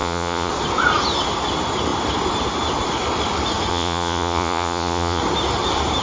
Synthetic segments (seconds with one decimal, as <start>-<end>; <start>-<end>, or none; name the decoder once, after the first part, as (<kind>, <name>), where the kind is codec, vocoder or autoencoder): 0.0-0.5 (vocoder, Vocos); 3.7-5.2